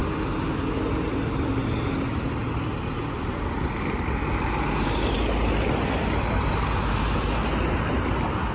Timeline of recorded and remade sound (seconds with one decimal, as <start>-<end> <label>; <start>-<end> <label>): 0.0-8.5 recorded